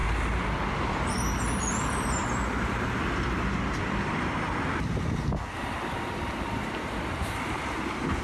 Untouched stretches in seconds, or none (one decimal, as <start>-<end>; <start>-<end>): 0.0-8.2